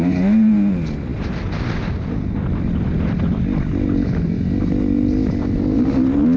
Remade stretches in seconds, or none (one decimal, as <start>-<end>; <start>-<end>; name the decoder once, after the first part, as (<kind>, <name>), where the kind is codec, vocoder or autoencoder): 1.1-2.2 (vocoder, BigVGAN v2)